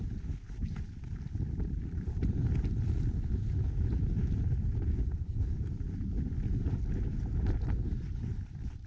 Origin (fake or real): real